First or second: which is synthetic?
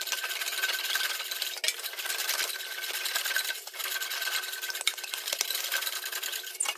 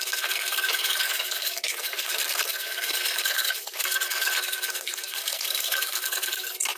second